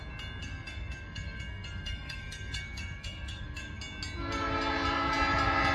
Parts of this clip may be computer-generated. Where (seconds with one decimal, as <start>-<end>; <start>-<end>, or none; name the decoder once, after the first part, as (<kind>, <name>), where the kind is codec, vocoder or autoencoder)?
0.4-3.8 (codec, SNAC)